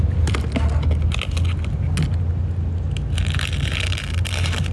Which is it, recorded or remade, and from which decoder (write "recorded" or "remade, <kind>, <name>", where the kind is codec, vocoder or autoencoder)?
recorded